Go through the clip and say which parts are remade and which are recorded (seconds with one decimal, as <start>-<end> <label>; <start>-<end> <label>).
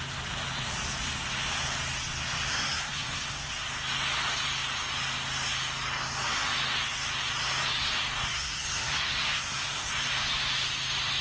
0.0-2.5 recorded; 2.5-3.5 remade; 3.5-8.3 recorded; 8.3-9.9 remade; 9.9-11.2 recorded